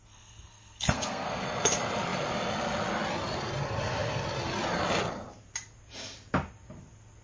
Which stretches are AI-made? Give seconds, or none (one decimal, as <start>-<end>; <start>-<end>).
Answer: 0.0-1.4